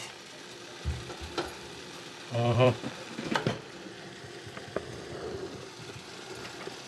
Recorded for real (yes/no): no